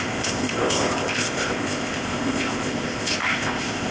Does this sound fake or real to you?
fake